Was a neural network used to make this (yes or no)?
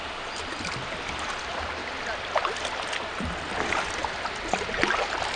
no